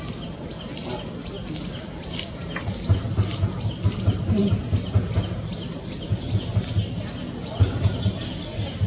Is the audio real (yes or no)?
yes